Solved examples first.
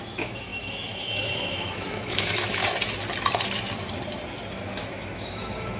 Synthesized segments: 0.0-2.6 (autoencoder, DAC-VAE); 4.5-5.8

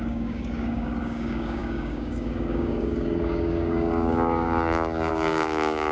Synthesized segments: 0.0-5.9 (codec, DAC)

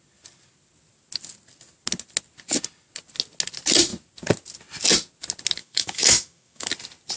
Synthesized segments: 5.6-6.7 (autoencoder, DAC-VAE)